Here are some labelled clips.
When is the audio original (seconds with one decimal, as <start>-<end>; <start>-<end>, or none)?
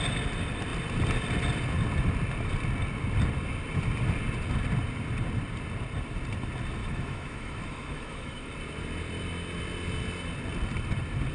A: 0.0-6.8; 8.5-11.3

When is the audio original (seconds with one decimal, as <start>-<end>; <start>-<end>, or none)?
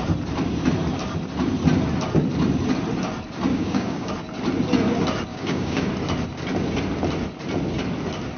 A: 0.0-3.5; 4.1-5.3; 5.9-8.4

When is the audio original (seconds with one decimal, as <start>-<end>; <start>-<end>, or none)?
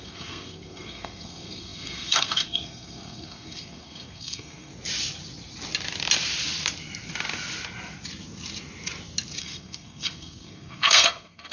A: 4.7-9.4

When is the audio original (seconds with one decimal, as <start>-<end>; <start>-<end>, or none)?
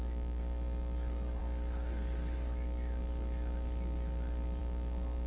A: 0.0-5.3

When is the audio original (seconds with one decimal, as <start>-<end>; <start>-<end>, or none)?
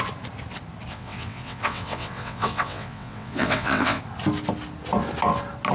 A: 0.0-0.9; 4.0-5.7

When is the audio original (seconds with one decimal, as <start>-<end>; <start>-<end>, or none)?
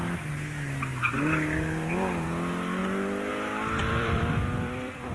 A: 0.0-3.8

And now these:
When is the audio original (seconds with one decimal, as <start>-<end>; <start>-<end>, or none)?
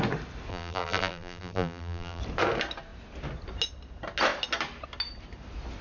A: 0.0-0.5; 2.2-5.8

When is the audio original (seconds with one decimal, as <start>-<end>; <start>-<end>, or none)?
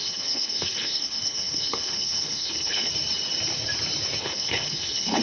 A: 2.9-4.2